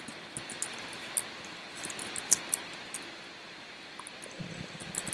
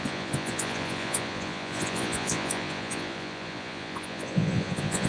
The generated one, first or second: second